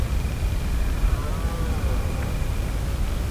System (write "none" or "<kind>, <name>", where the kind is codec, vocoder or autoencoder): none